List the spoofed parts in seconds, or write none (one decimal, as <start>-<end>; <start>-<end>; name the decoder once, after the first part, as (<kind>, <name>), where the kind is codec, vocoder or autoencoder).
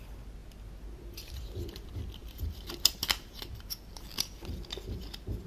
2.2-4.5 (vocoder, BigVGAN v2)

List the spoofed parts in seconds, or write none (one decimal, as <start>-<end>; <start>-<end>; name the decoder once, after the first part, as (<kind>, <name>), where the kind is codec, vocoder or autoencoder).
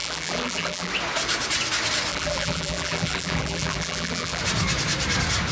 0.0-0.9 (vocoder, BigVGAN v2); 2.1-4.4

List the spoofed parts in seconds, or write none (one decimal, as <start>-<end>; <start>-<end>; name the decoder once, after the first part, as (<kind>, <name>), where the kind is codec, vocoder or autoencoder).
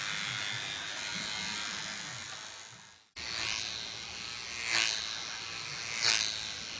none